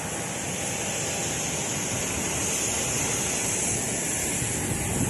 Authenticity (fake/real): real